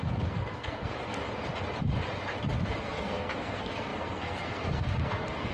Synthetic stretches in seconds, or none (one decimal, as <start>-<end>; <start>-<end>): 0.0-1.2; 2.8-5.5